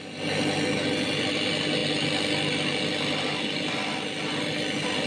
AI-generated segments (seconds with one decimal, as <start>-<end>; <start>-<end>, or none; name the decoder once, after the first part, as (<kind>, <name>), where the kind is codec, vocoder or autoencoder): none